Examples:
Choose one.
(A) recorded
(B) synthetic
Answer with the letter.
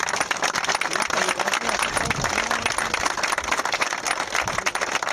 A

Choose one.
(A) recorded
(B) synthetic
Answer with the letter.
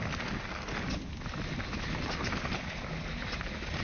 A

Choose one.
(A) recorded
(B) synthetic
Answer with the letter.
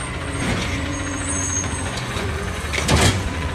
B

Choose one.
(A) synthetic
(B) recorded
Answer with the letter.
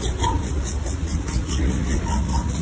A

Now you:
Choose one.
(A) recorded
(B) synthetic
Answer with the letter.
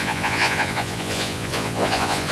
B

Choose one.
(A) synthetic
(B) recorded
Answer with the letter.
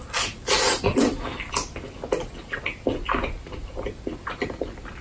B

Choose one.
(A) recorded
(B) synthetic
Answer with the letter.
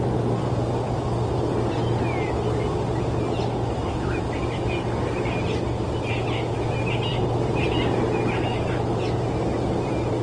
A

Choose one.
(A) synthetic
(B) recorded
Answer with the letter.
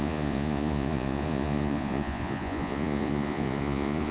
A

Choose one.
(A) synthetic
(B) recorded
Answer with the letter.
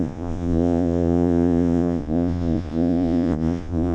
A